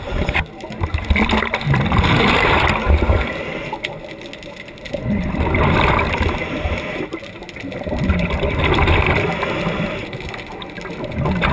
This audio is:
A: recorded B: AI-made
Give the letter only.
A